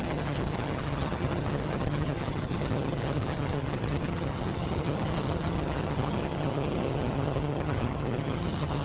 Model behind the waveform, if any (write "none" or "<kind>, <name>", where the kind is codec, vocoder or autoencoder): vocoder, HiFi-GAN